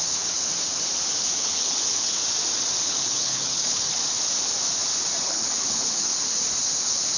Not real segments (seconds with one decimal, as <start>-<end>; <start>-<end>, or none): 0.0-0.5; 1.2-2.2; 2.8-4.0; 5.2-6.1; 6.8-7.2